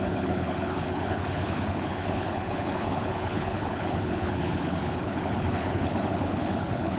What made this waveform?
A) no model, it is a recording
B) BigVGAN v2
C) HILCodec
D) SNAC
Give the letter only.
C